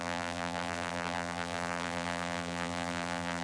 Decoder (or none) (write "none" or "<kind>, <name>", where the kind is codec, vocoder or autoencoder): vocoder, BigVGAN v2